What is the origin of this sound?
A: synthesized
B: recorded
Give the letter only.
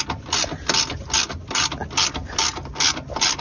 B